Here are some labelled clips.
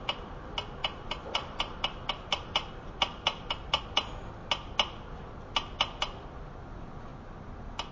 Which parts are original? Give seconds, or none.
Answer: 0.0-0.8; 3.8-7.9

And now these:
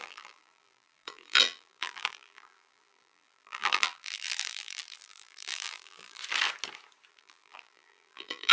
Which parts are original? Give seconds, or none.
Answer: 6.2-7.1